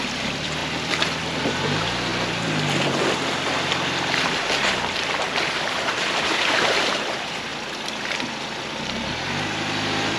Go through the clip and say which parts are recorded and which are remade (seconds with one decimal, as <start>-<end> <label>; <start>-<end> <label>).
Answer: 0.0-2.1 remade; 2.1-5.4 recorded; 5.4-7.5 remade; 7.5-9.1 recorded; 9.1-10.2 remade